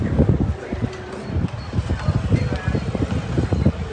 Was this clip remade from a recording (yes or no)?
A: no